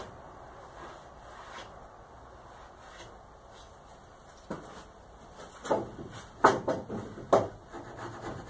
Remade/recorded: recorded